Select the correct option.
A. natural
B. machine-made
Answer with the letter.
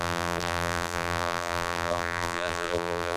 B